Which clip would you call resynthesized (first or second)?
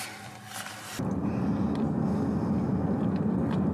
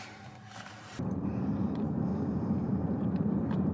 second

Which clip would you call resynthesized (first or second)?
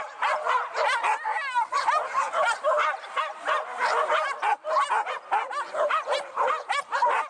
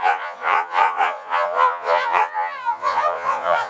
second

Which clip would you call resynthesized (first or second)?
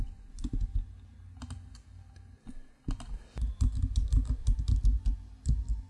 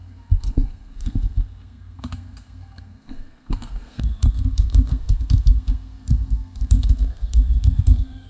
second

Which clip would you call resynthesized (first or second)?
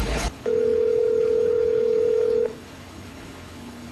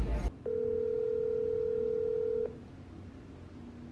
first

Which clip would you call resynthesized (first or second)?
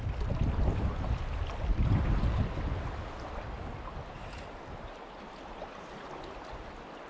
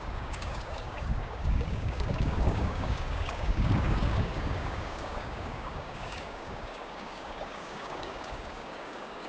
second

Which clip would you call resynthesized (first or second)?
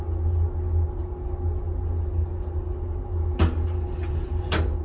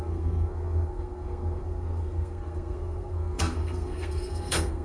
second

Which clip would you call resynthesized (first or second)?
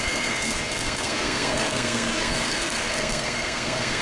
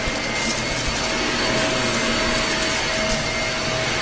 first